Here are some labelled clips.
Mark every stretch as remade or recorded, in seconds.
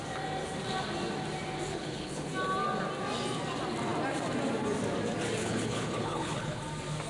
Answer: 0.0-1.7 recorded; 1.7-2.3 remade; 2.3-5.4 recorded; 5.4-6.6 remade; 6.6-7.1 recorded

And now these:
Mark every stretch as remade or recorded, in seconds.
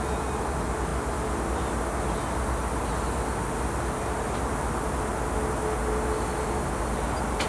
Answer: 0.0-7.5 recorded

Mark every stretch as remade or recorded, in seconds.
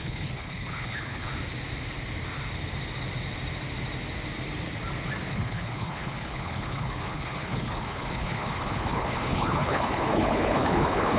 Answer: 0.0-1.3 remade; 1.3-5.3 recorded; 5.3-11.2 remade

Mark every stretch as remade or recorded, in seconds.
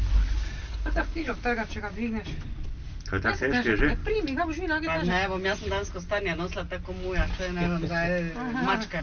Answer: 0.0-0.6 recorded; 0.6-1.3 remade; 1.3-9.0 recorded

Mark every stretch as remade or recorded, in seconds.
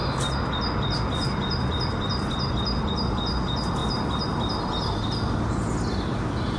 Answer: 0.0-6.6 recorded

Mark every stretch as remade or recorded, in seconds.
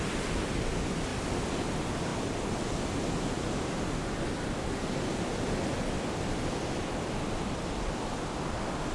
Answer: 0.0-8.9 recorded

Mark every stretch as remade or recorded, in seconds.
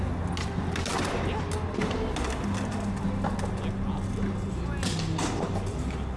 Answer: 0.0-6.2 recorded